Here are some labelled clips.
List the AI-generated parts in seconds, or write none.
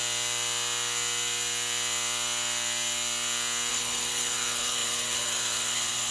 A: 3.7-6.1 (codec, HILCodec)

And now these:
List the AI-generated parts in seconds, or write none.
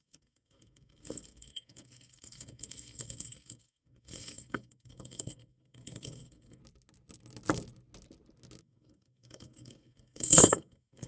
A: 0.0-6.6 (codec, SNAC); 8.6-11.1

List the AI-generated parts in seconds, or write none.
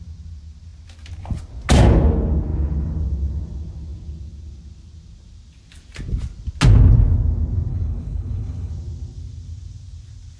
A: 7.7-8.7 (codec, HILCodec)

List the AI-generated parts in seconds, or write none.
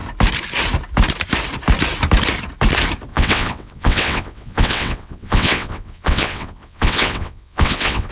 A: 3.1-8.1 (vocoder, WaveNeXt)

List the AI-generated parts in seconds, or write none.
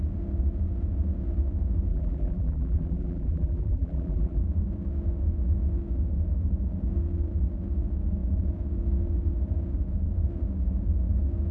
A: 1.9-4.4 (vocoder, BigVGAN v2)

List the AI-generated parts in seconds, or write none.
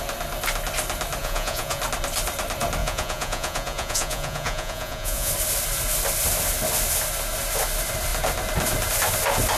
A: 1.2-1.8 (vocoder, Vocos); 2.8-5.3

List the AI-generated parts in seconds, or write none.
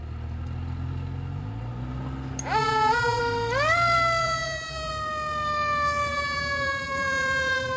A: 2.6-3.2 (vocoder, BigVGAN v2); 4.2-4.9; 6.1-7.8